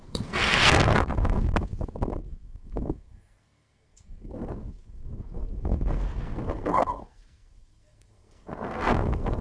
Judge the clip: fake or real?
fake